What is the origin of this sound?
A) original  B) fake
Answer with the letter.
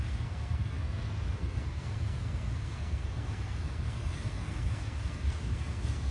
B